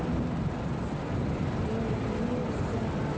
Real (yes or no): yes